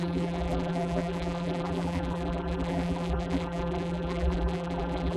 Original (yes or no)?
no